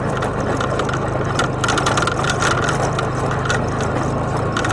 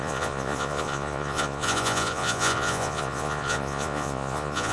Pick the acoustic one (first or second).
first